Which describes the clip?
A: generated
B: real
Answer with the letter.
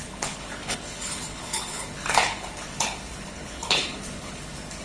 A